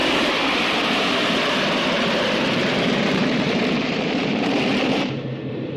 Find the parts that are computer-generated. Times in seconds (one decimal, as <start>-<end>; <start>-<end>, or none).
0.0-5.8